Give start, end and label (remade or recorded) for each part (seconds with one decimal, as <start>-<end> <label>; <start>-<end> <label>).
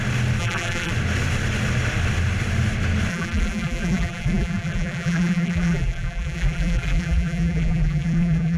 0.0-0.4 recorded; 0.4-0.9 remade; 0.9-3.1 recorded; 3.1-8.6 remade